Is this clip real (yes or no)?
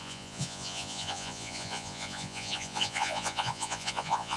no